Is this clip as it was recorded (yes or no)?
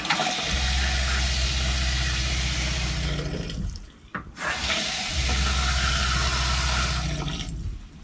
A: yes